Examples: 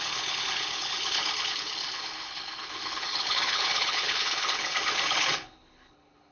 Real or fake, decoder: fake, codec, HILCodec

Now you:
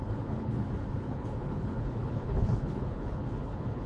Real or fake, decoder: fake, codec, HILCodec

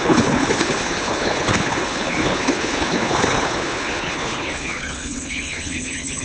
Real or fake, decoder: fake, codec, HILCodec